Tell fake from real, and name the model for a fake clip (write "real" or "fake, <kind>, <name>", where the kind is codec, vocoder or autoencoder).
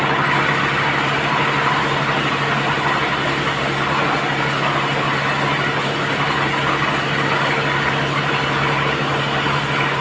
real